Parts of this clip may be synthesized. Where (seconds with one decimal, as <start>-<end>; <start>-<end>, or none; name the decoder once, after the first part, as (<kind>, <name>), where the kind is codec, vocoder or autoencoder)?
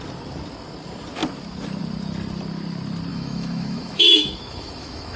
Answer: 3.1-5.2 (autoencoder, DAC-VAE)